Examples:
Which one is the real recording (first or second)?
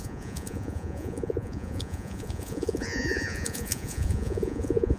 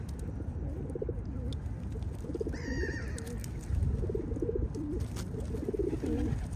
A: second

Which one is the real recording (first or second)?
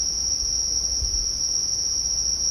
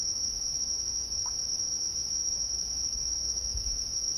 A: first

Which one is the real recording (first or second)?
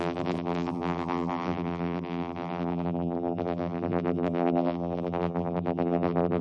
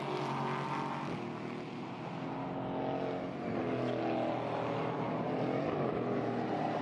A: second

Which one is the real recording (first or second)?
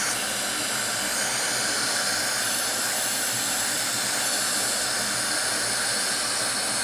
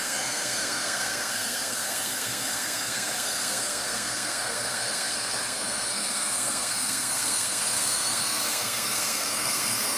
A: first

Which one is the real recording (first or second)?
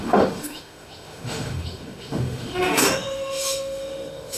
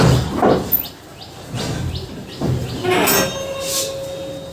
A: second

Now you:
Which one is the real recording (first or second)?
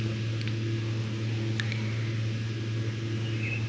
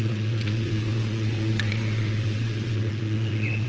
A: first